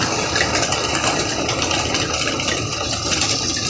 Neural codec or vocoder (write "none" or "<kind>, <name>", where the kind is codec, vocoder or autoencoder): none